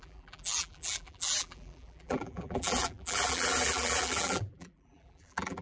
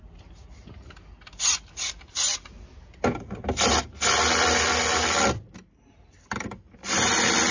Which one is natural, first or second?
second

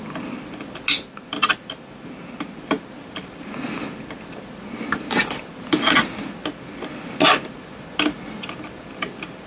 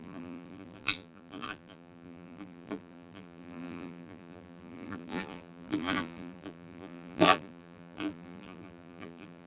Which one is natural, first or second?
first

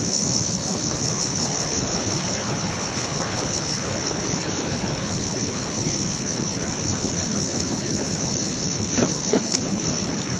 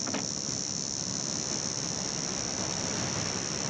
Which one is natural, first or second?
second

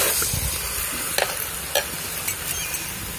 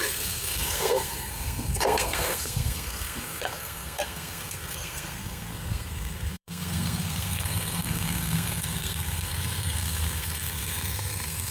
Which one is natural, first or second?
first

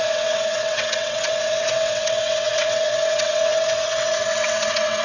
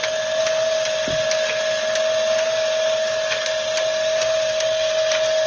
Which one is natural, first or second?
second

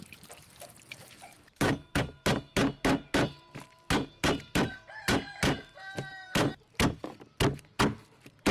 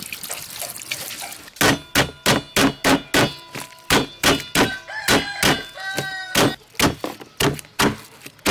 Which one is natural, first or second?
second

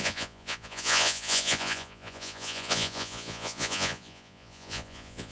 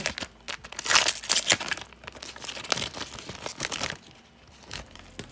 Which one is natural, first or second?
second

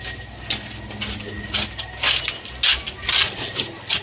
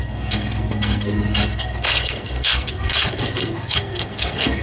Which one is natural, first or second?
first